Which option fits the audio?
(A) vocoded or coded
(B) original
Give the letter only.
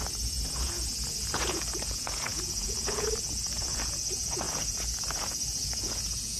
A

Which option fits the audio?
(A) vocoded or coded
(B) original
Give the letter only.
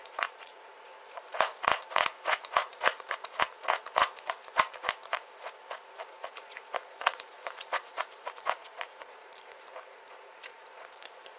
A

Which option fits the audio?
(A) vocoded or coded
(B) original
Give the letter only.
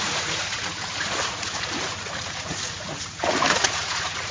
A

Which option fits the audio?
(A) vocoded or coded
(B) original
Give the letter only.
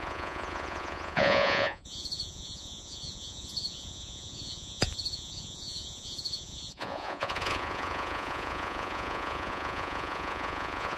A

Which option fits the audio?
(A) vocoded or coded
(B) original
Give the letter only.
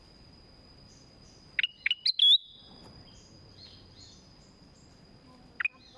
B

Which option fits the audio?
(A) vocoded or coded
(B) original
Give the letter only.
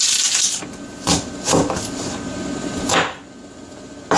B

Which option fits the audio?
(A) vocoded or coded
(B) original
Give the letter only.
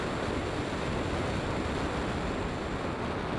B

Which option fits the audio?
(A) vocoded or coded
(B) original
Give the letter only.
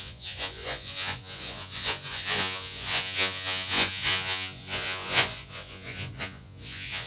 A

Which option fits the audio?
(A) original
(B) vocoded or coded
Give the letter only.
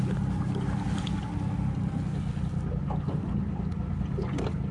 A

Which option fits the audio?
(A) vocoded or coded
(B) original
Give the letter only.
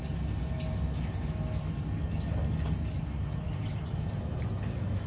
B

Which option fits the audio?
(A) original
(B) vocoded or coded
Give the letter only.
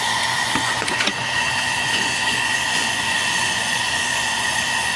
B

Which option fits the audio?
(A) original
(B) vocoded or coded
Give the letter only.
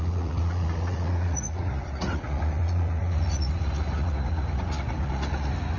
B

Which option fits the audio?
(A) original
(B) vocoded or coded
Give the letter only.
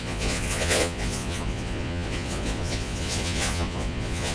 B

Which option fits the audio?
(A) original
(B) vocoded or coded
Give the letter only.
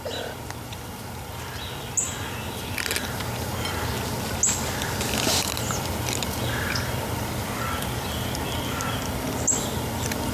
A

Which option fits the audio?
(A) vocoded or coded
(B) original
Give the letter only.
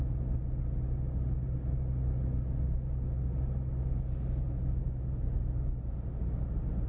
B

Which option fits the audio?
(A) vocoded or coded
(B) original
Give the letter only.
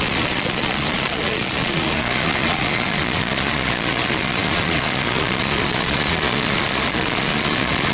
A